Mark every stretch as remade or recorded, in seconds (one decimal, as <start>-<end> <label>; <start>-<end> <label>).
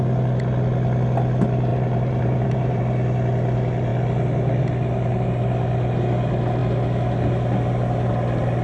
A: 0.0-1.7 recorded; 1.7-2.8 remade; 2.8-8.6 recorded